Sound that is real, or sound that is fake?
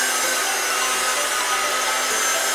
real